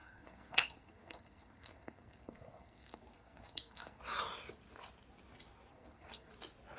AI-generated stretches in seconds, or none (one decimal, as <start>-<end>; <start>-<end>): 0.0-4.0; 5.7-6.3